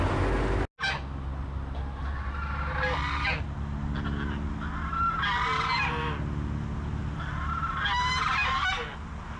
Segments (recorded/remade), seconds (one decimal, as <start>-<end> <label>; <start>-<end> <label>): 0.0-9.4 recorded